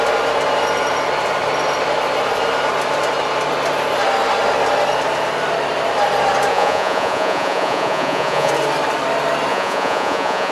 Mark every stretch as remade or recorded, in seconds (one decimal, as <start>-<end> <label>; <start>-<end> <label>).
0.0-6.5 recorded; 6.5-8.5 remade; 8.5-9.5 recorded; 9.5-10.5 remade